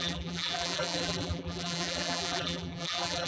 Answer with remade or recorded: remade